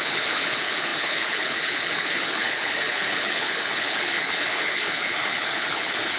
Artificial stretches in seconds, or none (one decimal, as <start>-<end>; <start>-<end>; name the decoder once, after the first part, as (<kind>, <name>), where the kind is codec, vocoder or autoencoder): 0.0-6.2 (codec, HILCodec)